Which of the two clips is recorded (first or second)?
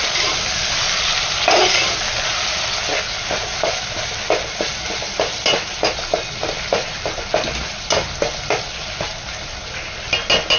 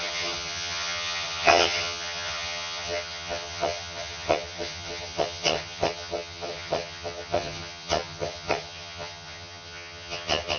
first